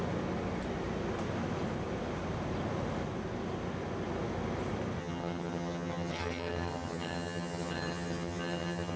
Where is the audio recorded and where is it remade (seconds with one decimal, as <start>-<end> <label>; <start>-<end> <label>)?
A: 0.0-5.0 recorded; 5.0-9.0 remade